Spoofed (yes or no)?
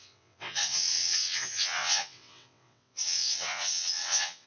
yes